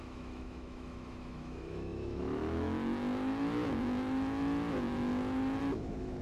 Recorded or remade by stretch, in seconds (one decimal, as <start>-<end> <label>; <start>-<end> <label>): 0.0-6.2 remade